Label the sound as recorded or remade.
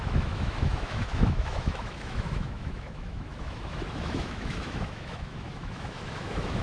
remade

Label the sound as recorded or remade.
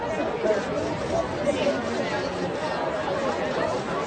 recorded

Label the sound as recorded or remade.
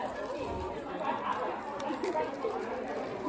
recorded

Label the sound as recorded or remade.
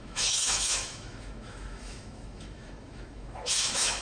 remade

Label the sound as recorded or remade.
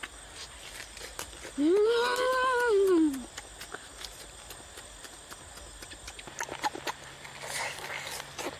recorded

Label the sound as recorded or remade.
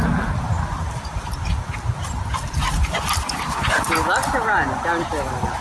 recorded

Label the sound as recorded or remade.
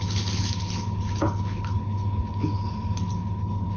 remade